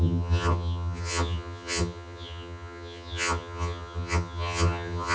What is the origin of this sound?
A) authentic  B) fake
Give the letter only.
B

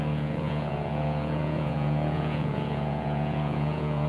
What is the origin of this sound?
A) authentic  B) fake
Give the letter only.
B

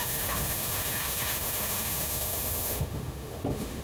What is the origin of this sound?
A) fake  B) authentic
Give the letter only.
A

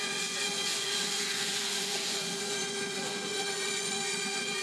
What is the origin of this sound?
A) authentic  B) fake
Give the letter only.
B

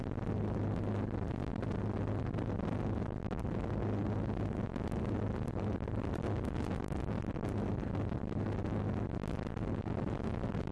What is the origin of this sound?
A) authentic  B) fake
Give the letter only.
A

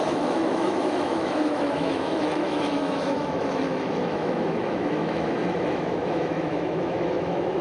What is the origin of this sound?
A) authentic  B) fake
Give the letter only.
B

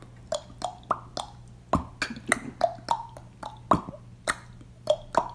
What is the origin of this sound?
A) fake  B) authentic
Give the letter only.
B